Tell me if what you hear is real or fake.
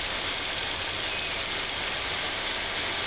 real